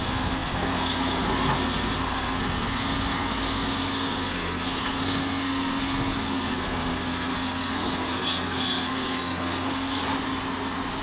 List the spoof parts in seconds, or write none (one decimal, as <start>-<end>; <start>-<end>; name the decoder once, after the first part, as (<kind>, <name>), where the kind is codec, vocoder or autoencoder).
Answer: 0.0-10.0 (codec, SNAC)